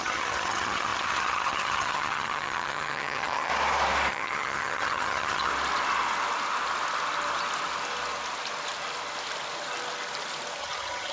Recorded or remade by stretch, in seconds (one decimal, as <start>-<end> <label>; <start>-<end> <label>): 0.0-3.5 remade; 3.5-4.1 recorded; 4.1-5.5 remade; 5.5-10.6 recorded; 10.6-11.1 remade